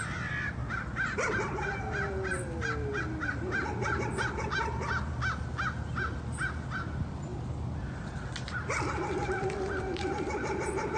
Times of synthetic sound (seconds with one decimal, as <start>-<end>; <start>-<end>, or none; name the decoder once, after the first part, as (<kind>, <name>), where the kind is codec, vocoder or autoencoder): none